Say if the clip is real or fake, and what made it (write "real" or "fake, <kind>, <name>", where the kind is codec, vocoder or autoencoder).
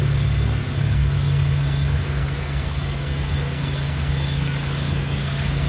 fake, codec, SNAC